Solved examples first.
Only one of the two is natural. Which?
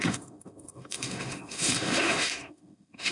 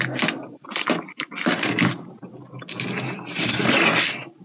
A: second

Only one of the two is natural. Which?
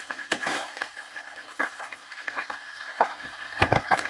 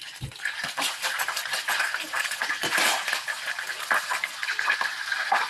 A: second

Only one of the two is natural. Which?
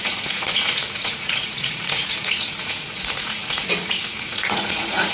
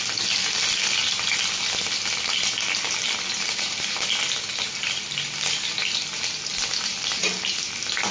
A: second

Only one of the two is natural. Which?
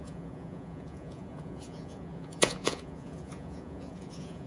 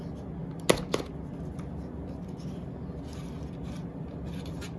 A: second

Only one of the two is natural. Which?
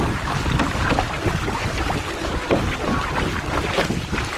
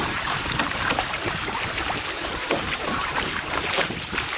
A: first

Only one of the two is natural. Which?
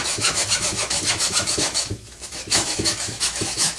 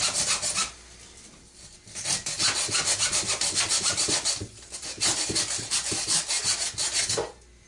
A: second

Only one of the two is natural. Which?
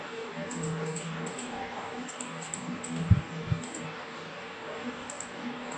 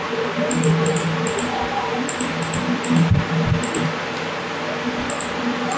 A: second